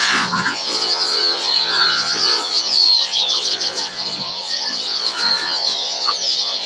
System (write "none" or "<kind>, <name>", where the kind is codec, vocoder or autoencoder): vocoder, Vocos